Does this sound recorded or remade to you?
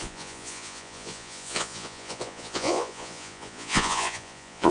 remade